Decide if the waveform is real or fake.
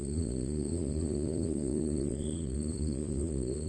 fake